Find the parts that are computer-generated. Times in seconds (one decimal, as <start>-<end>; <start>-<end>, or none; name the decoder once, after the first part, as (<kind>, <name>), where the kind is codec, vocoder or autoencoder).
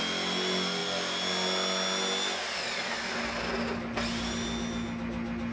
none